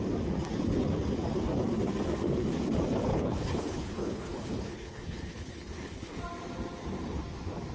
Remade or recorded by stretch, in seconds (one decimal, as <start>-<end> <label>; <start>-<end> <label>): 0.0-3.1 recorded; 3.1-6.2 remade; 6.2-7.7 recorded